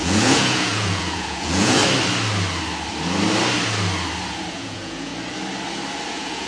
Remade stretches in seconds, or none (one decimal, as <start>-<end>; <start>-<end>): 0.0-1.8; 4.5-5.1; 6.1-6.5